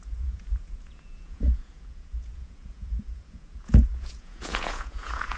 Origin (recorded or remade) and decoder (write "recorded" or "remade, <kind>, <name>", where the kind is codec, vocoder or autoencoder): remade, vocoder, Vocos